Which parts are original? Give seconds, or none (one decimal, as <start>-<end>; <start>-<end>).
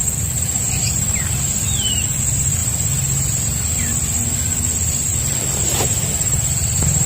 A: 0.8-2.6; 3.8-5.1; 6.1-7.1